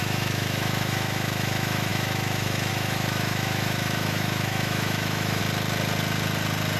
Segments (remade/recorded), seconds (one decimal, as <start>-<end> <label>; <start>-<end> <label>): 0.0-5.4 remade; 5.4-6.8 recorded